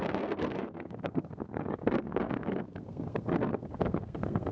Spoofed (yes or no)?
yes